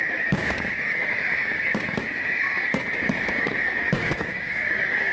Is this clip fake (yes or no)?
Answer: yes